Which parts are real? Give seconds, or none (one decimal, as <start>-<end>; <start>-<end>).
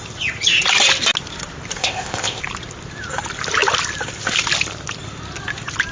0.0-1.8; 2.4-5.9